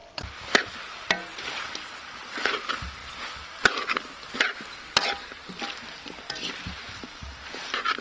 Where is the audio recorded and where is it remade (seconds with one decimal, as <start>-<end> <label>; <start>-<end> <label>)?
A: 0.0-1.3 recorded; 1.3-2.4 remade; 2.4-3.0 recorded; 3.0-4.9 remade; 4.9-8.0 recorded